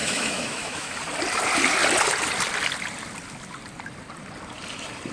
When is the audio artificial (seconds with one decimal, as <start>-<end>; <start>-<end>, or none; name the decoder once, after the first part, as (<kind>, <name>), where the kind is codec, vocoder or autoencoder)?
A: 0.0-1.0 (autoencoder, DAC-VAE)